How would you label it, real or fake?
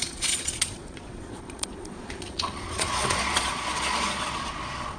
fake